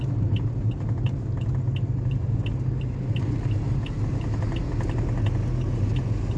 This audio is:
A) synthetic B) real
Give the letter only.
B